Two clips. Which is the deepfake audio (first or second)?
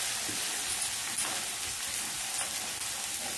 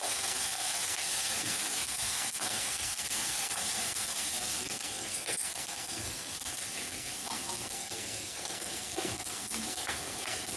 second